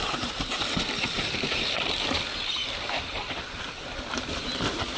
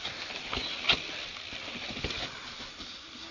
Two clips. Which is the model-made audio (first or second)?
first